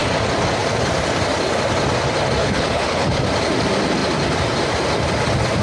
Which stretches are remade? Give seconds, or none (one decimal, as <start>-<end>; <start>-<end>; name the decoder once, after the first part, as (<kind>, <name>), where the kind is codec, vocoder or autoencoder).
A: 2.4-3.2 (codec, HILCodec)